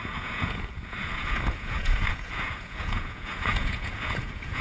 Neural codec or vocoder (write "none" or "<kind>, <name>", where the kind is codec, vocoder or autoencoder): vocoder, Vocos